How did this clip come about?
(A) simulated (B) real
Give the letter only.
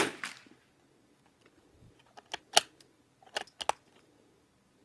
B